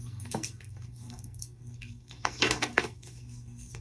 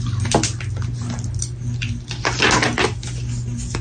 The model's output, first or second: first